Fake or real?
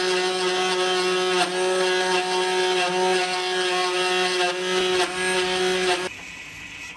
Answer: real